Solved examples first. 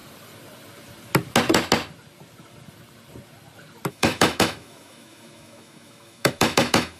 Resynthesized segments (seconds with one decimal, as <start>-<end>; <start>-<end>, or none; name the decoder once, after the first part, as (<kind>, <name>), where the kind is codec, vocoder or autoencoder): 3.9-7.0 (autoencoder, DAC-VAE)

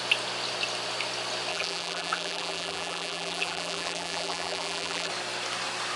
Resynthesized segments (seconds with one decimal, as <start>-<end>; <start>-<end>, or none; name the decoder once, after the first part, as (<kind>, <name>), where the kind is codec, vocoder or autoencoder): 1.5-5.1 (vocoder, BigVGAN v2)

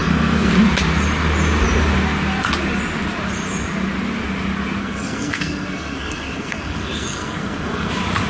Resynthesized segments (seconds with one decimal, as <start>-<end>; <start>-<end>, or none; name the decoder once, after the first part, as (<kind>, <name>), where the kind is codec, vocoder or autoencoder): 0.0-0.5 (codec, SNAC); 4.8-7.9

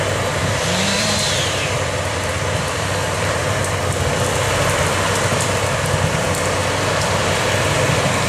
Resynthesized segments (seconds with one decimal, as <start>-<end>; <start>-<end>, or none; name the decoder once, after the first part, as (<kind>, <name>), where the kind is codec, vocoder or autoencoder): 0.4-3.8 (vocoder, BigVGAN v2); 6.6-8.3